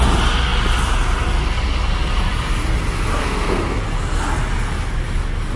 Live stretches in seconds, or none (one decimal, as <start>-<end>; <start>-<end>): 0.0-3.2; 3.8-5.6